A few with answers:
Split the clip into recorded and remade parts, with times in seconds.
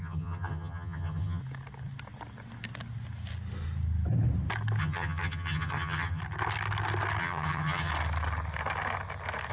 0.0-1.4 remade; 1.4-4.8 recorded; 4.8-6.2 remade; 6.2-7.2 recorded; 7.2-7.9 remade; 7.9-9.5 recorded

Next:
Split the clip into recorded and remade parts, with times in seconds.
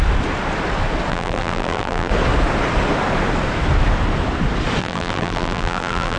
0.0-1.1 recorded; 1.1-2.1 remade; 2.1-4.8 recorded; 4.8-6.2 remade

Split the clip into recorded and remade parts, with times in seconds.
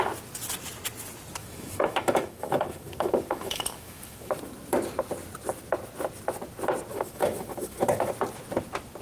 0.0-1.4 recorded; 1.4-4.4 remade; 4.4-6.9 recorded; 6.9-8.1 remade; 8.1-9.0 recorded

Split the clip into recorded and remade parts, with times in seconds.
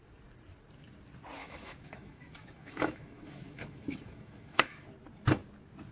0.0-1.4 recorded; 1.4-4.9 remade; 4.9-5.9 recorded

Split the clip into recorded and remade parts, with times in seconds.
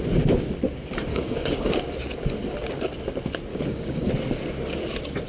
0.0-1.1 recorded; 1.1-1.7 remade; 1.7-3.5 recorded; 3.5-4.1 remade; 4.1-5.3 recorded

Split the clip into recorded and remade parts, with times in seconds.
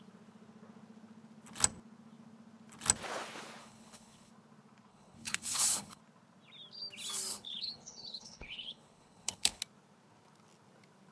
0.0-3.6 recorded; 3.6-4.3 remade; 4.3-4.9 recorded; 4.9-6.0 remade; 6.0-7.3 recorded; 7.3-9.6 remade; 9.6-11.1 recorded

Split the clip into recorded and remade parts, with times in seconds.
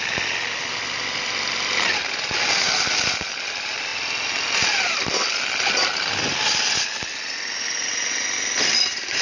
0.0-9.2 recorded